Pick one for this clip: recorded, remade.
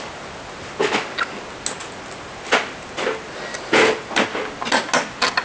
recorded